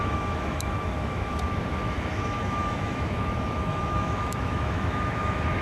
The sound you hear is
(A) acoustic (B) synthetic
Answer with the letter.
B